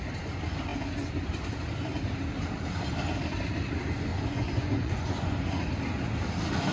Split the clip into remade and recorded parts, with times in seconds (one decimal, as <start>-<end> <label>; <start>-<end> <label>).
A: 0.0-4.1 recorded; 4.1-5.6 remade; 5.6-6.7 recorded